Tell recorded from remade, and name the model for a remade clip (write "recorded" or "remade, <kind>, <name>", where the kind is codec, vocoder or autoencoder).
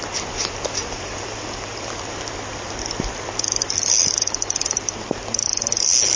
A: recorded